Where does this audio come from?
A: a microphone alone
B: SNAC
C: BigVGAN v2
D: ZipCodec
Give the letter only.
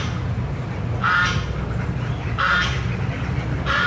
A